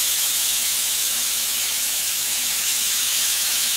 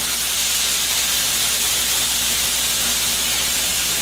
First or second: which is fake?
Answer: first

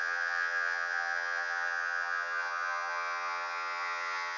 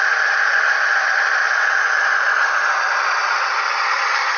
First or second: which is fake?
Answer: first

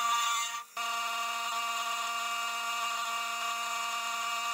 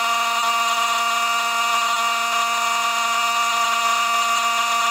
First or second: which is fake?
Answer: first